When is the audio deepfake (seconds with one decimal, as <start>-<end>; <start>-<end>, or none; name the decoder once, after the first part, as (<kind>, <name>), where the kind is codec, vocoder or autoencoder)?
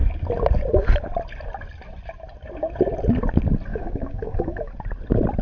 3.7-4.7 (autoencoder, DAC-VAE)